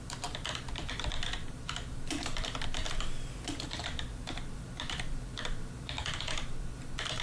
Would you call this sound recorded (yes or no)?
no